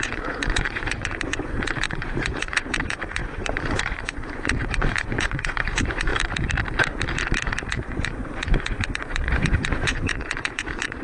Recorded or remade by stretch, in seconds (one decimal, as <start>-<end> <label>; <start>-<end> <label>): 0.0-6.1 remade; 6.1-7.6 recorded; 7.6-11.0 remade

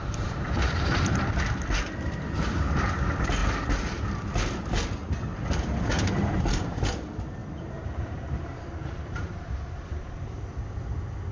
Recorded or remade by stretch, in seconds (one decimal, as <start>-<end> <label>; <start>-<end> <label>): 0.0-1.2 remade; 1.2-3.4 recorded; 3.4-4.0 remade; 4.0-5.3 recorded; 5.3-6.9 remade; 6.9-7.4 recorded; 7.4-10.5 remade; 10.5-11.3 recorded

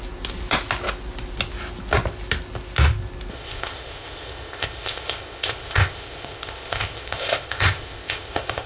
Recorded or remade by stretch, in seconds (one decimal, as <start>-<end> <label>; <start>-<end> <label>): 0.0-3.3 recorded; 3.3-8.7 remade